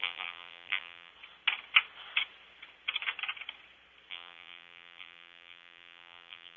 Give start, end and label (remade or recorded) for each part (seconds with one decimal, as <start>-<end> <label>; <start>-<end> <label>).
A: 0.0-1.1 remade; 1.1-4.1 recorded; 4.1-6.6 remade

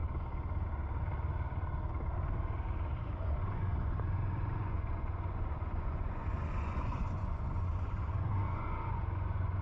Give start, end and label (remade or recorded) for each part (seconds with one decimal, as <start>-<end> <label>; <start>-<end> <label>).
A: 0.0-3.0 recorded; 3.0-9.6 remade

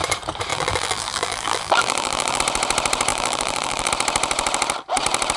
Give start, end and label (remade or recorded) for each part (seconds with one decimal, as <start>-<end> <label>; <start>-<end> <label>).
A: 0.0-0.5 recorded; 0.5-2.4 remade; 2.4-3.1 recorded; 3.1-3.9 remade; 3.9-5.4 recorded

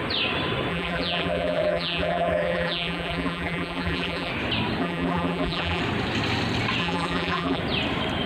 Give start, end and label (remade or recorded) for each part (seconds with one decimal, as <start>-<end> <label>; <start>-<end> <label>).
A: 0.0-0.7 recorded; 0.7-4.3 remade; 4.3-4.8 recorded; 4.8-5.8 remade; 5.8-6.8 recorded; 6.8-7.6 remade; 7.6-8.3 recorded